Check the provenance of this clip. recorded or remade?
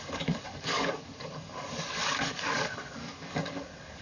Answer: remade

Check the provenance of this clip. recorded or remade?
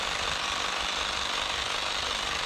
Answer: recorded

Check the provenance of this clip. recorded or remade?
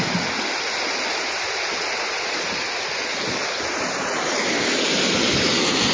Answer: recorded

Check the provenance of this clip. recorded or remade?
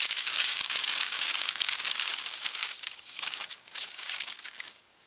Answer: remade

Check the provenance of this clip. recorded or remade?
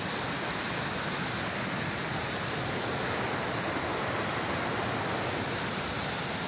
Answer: recorded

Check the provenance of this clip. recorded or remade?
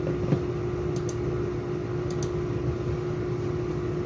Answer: recorded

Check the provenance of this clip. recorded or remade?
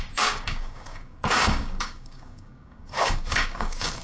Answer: remade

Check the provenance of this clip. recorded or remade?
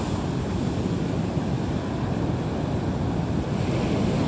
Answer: recorded